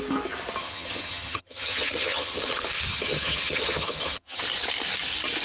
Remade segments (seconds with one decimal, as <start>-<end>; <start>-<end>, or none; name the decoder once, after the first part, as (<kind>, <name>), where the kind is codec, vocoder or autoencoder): 0.6-2.5 (vocoder, HiFi-GAN); 2.9-4.4